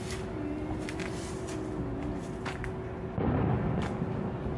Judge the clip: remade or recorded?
recorded